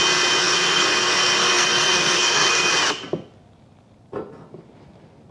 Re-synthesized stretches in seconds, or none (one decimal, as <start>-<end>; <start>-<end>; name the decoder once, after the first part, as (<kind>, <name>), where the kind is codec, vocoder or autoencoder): 0.4-2.7 (codec, SNAC)